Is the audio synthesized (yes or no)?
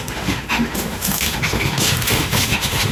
yes